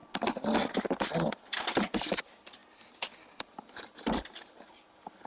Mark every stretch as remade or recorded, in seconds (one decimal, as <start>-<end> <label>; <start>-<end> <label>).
0.0-5.3 recorded